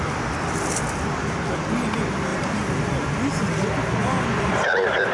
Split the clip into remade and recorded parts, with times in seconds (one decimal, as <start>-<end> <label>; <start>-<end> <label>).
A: 0.0-2.3 recorded; 2.3-3.2 remade; 3.2-4.0 recorded; 4.0-5.1 remade